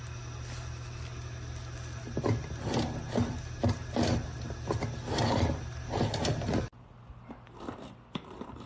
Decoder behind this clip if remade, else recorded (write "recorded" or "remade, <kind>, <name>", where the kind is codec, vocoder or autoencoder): recorded